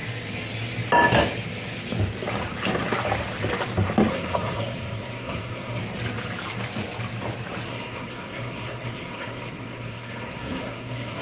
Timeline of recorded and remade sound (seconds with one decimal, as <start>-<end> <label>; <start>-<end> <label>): 0.0-4.1 recorded; 4.1-5.8 remade; 5.8-7.7 recorded; 7.7-11.2 remade